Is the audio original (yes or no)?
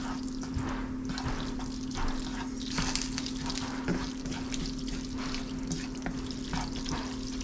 yes